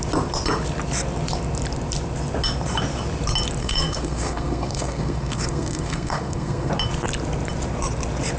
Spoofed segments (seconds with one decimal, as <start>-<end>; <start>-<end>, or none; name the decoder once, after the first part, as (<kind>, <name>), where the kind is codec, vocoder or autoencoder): 3.6-6.7 (codec, SNAC)

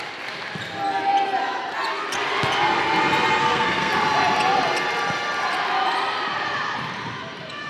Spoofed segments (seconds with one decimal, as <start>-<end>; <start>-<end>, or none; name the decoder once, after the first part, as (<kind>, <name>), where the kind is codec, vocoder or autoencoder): 3.4-3.9 (codec, SNAC)